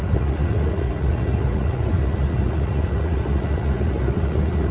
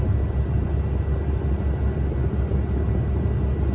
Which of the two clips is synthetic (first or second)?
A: first